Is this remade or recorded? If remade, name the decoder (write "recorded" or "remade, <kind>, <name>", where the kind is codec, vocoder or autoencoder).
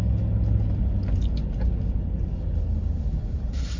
recorded